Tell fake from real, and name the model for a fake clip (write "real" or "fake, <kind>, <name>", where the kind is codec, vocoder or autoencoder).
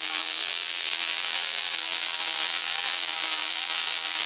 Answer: fake, vocoder, BigVGAN v2